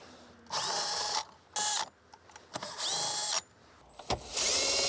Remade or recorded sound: recorded